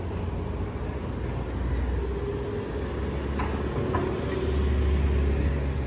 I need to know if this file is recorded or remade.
recorded